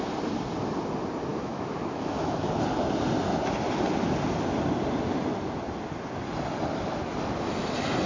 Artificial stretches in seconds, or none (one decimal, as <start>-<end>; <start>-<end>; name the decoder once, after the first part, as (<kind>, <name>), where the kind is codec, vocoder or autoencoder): 1.3-2.5 (autoencoder, DAC-VAE)